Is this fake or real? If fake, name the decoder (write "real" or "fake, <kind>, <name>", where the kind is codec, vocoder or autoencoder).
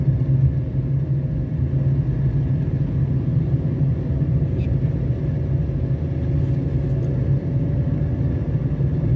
real